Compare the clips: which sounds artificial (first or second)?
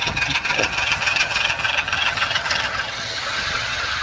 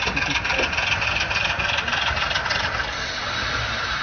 first